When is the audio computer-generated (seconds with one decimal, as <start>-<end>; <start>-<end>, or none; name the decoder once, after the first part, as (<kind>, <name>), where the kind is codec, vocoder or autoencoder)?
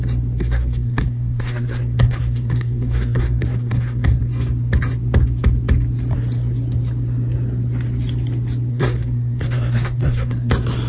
0.4-4.2 (codec, SNAC); 8.7-10.5